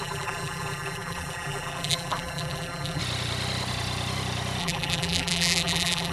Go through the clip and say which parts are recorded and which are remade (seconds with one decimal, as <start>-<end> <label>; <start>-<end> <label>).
0.0-3.0 remade; 3.0-4.6 recorded; 4.6-6.1 remade